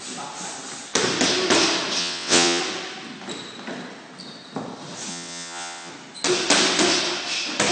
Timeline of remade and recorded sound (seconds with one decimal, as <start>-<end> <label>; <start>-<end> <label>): 0.0-2.0 recorded; 2.0-2.6 remade; 2.6-5.1 recorded; 5.1-5.9 remade; 5.9-7.7 recorded